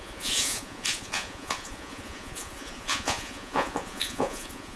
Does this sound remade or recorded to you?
remade